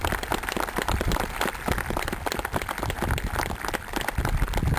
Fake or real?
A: real